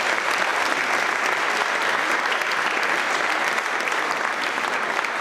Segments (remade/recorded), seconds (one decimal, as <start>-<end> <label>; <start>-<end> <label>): 0.0-5.2 recorded